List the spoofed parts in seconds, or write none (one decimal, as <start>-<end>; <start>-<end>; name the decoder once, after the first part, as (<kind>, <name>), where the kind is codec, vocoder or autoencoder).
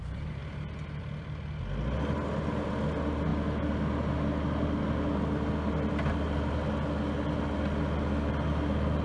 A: none